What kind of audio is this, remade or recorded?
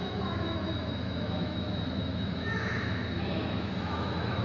remade